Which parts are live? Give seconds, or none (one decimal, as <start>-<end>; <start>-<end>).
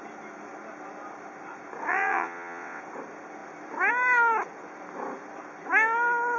0.0-1.9; 2.8-6.4